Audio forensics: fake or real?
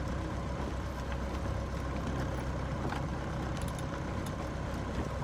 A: real